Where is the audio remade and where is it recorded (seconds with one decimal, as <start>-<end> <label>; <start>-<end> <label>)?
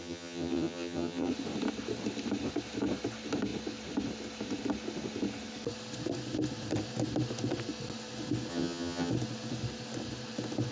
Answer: 0.0-1.3 remade; 1.3-8.5 recorded; 8.5-9.1 remade; 9.1-10.7 recorded